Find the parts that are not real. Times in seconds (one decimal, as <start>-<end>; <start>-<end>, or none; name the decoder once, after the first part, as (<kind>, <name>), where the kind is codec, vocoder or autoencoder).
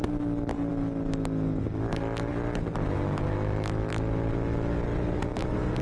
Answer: 4.9-5.8 (vocoder, BigVGAN v2)